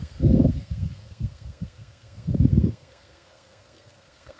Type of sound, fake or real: fake